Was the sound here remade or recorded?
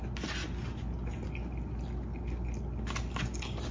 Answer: recorded